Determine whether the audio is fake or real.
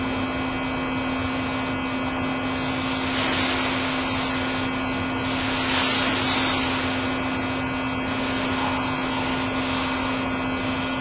real